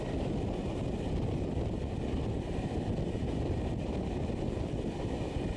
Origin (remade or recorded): recorded